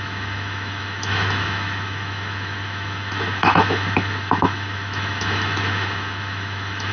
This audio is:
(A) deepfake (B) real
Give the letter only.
A